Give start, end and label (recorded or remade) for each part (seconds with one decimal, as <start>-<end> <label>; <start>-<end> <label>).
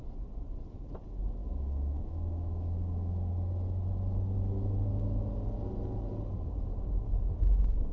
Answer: 0.0-1.4 recorded; 1.4-3.3 remade; 3.3-7.9 recorded